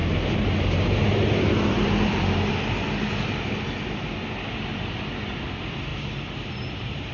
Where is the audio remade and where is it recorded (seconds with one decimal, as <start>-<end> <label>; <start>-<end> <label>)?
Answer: 0.0-5.9 recorded; 5.9-7.1 remade